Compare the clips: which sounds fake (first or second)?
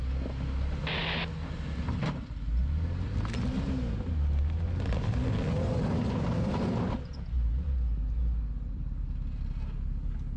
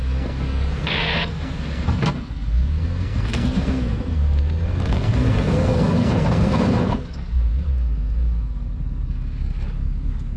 second